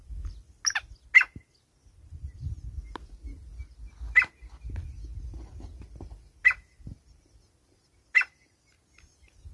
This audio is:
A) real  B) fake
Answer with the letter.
A